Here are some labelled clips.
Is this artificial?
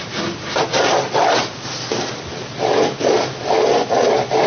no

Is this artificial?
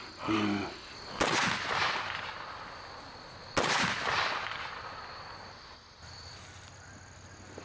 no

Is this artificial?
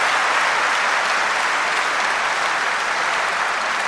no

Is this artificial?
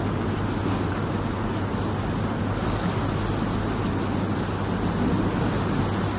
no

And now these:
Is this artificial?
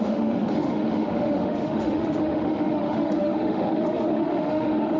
yes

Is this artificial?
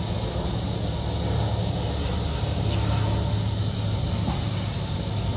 no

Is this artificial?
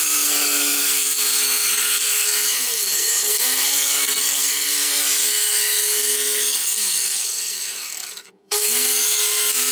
yes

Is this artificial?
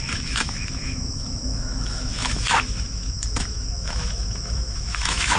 yes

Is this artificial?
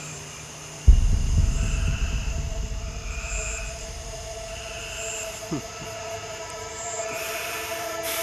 yes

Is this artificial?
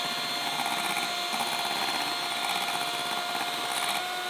no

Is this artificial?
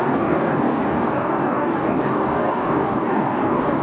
yes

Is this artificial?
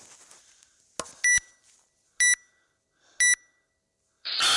no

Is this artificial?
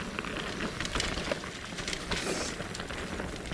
no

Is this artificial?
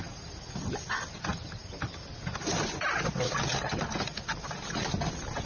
no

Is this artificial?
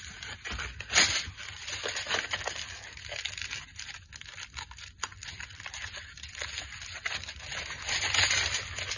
no